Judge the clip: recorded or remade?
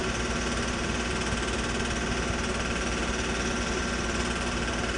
recorded